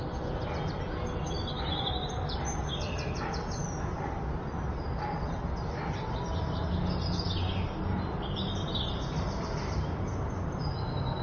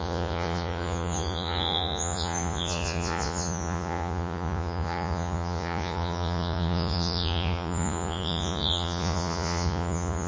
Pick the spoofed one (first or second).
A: second